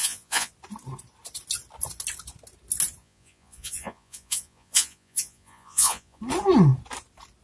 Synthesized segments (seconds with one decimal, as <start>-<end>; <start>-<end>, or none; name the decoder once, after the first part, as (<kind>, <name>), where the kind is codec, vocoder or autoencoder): 0.0-0.5 (vocoder, Vocos); 3.0-6.2